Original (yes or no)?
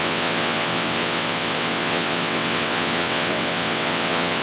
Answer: no